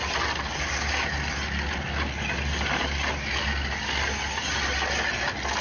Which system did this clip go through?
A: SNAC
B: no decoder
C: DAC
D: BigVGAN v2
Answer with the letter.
B